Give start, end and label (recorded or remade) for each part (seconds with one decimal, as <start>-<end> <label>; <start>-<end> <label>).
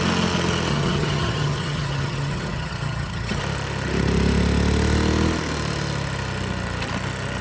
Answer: 0.0-0.7 recorded; 0.7-3.4 remade; 3.4-7.4 recorded